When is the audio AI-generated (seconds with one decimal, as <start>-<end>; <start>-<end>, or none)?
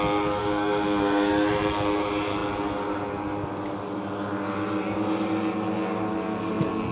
0.4-1.3